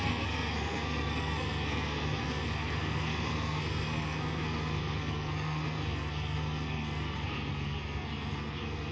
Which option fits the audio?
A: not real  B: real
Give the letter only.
A